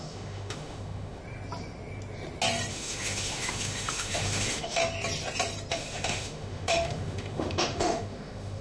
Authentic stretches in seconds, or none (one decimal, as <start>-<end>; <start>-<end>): 1.2-2.7; 4.8-5.7